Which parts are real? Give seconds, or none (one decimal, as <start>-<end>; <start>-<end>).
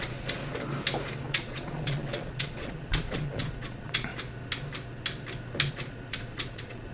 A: 0.4-1.3; 4.1-5.7